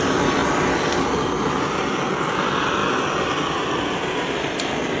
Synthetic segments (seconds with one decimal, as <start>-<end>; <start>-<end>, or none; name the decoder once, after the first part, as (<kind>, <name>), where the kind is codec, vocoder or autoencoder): none